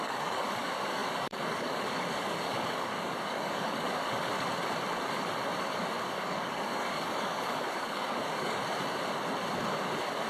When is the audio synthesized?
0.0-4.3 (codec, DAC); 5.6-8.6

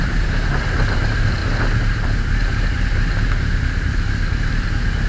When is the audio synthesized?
none

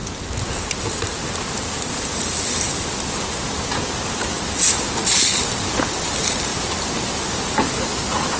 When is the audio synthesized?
none

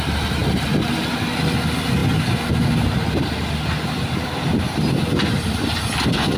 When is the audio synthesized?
none